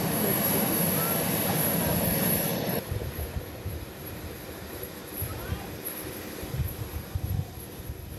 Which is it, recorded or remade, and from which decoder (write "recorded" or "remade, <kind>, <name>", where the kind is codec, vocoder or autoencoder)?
recorded